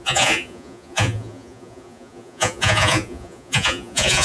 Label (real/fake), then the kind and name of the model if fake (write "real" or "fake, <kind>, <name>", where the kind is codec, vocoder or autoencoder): fake, vocoder, Vocos